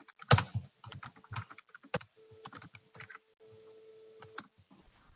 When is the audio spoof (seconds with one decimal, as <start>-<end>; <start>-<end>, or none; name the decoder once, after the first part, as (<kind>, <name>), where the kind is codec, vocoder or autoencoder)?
none